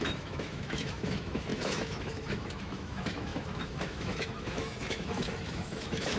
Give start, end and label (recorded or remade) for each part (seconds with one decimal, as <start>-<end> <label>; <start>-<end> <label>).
0.0-6.2 remade